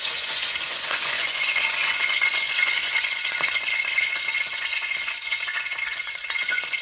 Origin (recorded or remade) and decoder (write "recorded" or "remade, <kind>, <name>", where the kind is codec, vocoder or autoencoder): remade, vocoder, Vocos